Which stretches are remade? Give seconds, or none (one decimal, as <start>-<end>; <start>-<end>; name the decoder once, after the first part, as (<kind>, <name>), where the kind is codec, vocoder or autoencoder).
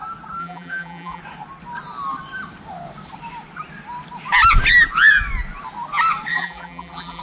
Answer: 0.4-1.2 (vocoder, BigVGAN v2); 6.3-7.2